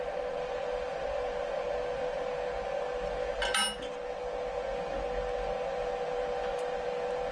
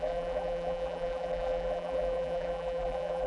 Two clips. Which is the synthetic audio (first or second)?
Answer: second